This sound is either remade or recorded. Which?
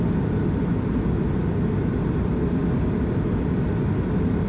recorded